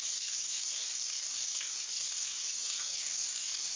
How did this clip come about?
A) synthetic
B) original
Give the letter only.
A